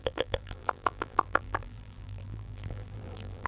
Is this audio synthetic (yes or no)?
yes